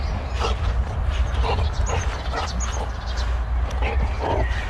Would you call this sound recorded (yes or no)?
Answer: yes